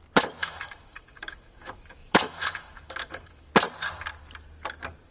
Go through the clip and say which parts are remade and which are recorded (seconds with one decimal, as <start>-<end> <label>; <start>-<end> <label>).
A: 0.0-0.4 recorded; 0.4-3.5 remade; 3.5-5.1 recorded